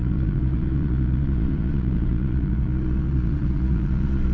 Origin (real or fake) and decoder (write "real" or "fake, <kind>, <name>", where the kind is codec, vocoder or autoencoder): fake, vocoder, Vocos